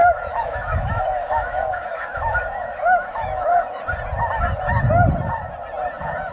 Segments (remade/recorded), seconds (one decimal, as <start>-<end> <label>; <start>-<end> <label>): 0.0-3.8 remade; 3.8-6.3 recorded